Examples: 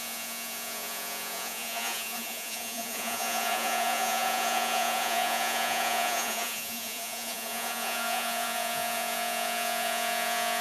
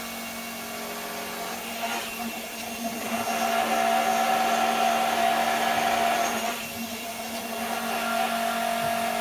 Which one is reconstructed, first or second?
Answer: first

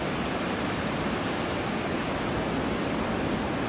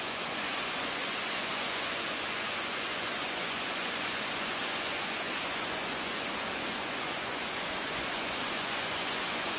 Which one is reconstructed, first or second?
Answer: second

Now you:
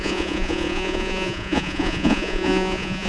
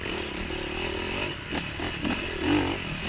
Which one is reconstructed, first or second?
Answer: first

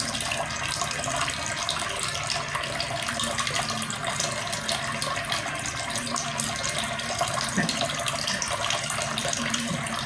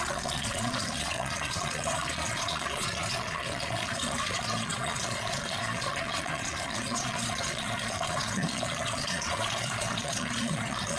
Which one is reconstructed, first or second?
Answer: second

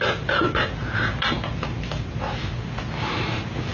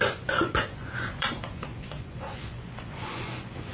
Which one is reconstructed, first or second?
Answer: second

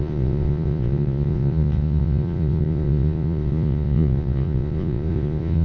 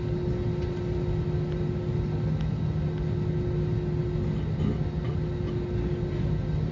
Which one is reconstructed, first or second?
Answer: first